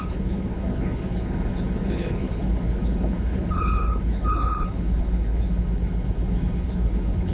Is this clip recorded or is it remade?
remade